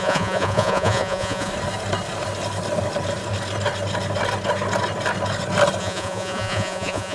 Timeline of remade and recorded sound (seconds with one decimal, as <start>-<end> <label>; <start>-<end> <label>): 0.0-1.5 remade; 1.5-5.8 recorded; 5.8-7.1 remade